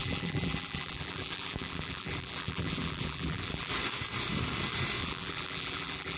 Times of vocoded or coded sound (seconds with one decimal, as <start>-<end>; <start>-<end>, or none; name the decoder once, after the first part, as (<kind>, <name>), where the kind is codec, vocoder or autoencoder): 0.0-3.7 (vocoder, BigVGAN v2); 5.0-6.2